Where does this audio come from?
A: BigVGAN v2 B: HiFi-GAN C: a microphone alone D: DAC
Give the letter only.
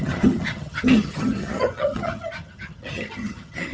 B